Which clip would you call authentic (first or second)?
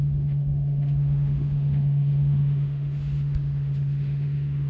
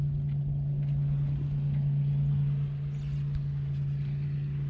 second